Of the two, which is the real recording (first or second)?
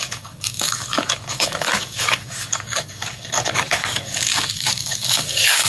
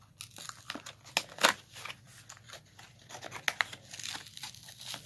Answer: second